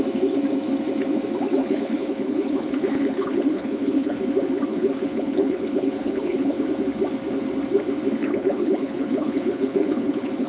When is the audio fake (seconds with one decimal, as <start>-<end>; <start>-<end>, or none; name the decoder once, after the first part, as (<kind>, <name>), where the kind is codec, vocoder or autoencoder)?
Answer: 1.6-4.2 (codec, HILCodec); 4.7-6.6; 8.2-10.5

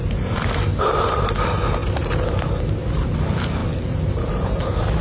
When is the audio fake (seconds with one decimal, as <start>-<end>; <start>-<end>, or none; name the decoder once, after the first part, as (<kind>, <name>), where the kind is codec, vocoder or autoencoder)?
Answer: none